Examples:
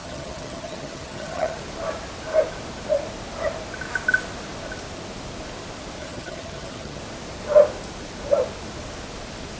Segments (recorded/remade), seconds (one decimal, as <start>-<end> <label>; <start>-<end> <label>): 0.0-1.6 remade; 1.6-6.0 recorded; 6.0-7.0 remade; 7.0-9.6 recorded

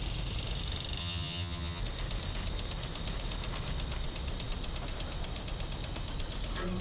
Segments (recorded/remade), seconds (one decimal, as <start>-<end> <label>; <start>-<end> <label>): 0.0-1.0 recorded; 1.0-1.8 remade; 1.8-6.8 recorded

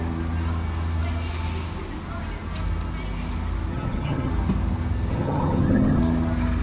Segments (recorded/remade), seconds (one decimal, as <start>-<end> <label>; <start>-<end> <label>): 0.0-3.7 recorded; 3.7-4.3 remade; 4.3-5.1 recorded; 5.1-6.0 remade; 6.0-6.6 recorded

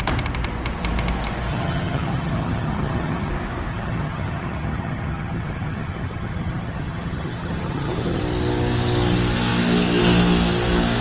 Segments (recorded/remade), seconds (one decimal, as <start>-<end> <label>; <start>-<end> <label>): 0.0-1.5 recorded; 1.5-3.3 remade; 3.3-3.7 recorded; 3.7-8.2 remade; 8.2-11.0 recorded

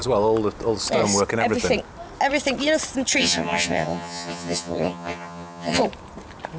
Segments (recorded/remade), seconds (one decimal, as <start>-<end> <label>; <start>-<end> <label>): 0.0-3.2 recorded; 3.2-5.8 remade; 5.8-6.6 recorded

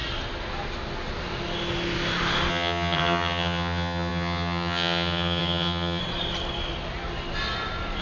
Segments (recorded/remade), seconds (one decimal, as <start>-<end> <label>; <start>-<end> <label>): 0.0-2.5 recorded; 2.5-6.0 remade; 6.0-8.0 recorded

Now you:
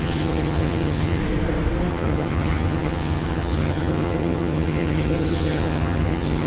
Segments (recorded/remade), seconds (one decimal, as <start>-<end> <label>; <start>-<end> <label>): 0.0-1.2 remade; 1.2-1.9 recorded; 1.9-6.5 remade